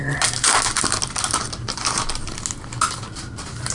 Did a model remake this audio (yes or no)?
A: no